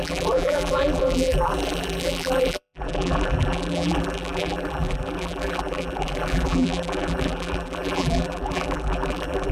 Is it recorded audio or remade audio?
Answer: remade